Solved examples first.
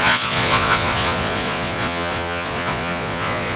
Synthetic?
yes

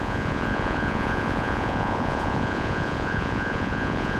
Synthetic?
yes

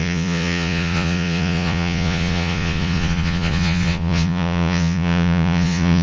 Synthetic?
yes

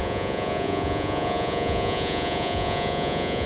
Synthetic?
yes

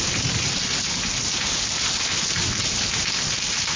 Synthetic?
no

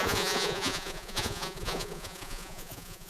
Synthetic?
yes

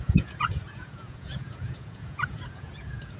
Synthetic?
yes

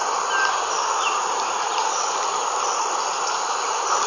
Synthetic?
no